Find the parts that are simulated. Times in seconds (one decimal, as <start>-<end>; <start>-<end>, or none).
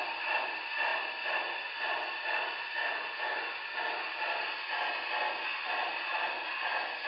none